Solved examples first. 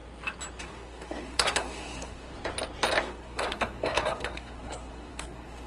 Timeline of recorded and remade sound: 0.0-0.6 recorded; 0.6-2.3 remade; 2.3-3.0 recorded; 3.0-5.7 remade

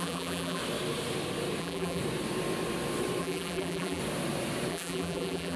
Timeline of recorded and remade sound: 0.0-0.6 remade; 0.6-1.6 recorded; 1.6-2.0 remade; 2.0-3.2 recorded; 3.2-4.0 remade; 4.0-4.7 recorded; 4.7-5.6 remade

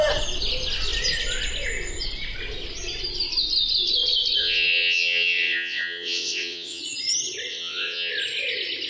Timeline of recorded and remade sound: 0.0-4.4 recorded; 4.4-6.8 remade; 6.8-7.5 recorded; 7.5-8.1 remade; 8.1-8.9 recorded

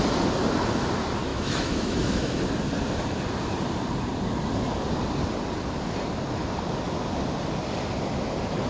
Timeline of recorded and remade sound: 0.0-1.3 recorded; 1.3-2.4 remade; 2.4-8.7 recorded

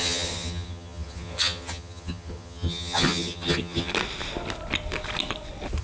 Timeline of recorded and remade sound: 0.0-3.9 remade; 3.9-5.8 recorded

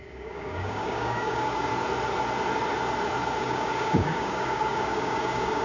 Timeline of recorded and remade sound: 0.0-1.7 remade; 1.7-3.4 recorded; 3.4-5.6 remade

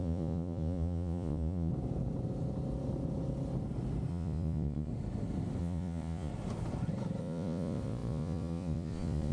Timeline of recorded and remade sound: 0.0-1.7 remade; 1.7-4.1 recorded; 4.1-4.9 remade; 4.9-5.6 recorded; 5.6-6.3 remade; 6.3-7.2 recorded; 7.2-9.3 remade